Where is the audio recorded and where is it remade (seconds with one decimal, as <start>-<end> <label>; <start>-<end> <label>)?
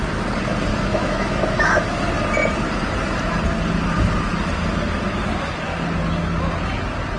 0.0-0.7 recorded; 0.7-2.0 remade; 2.0-7.2 recorded